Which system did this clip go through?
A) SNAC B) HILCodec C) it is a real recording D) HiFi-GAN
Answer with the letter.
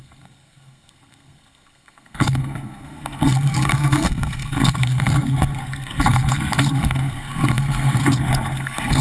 A